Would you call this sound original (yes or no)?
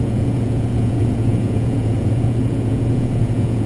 no